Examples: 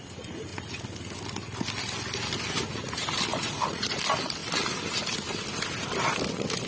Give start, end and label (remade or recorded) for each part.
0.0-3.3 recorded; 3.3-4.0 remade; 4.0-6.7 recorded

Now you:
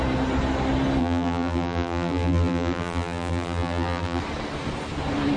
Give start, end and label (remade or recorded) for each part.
0.0-1.0 recorded; 1.0-4.2 remade; 4.2-5.4 recorded

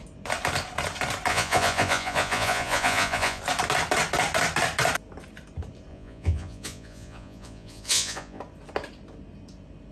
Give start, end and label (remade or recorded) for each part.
0.0-1.3 recorded; 1.3-3.4 remade; 3.4-5.9 recorded; 5.9-8.4 remade; 8.4-9.9 recorded